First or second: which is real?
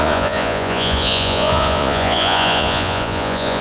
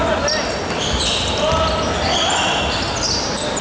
second